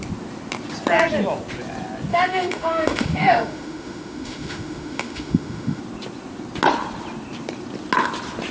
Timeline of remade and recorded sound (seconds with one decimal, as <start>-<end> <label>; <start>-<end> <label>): 0.0-2.1 recorded; 2.1-5.8 remade; 5.8-8.5 recorded